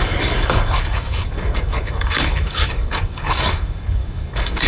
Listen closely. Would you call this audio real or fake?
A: fake